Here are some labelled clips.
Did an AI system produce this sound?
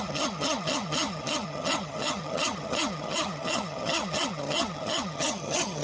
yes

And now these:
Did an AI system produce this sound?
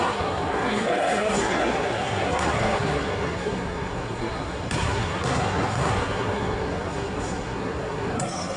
yes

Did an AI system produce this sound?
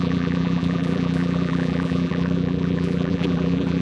yes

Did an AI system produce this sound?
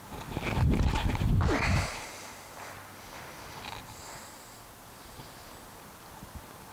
no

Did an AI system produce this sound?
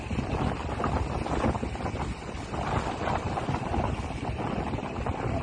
no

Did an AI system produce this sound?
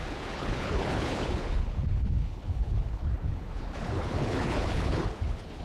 yes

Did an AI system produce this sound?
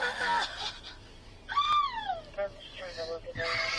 no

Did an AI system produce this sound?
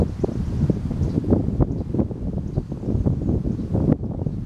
no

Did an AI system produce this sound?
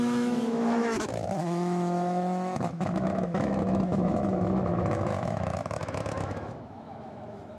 yes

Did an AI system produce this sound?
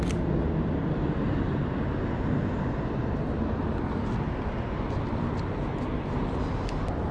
no